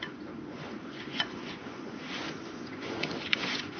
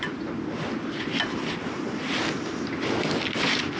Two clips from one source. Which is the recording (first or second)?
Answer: second